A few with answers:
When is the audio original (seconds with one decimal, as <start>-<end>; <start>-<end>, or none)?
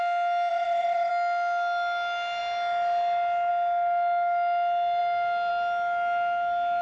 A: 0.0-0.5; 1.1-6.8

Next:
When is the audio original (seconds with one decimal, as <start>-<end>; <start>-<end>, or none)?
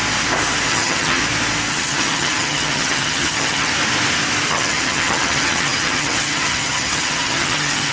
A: 0.0-0.7; 1.2-1.7; 3.7-4.5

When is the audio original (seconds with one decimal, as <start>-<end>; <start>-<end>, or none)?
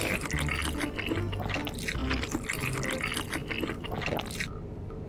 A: 0.0-5.1